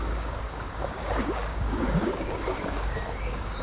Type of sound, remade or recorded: remade